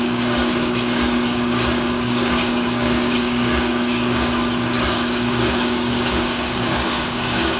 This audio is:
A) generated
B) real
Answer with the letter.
A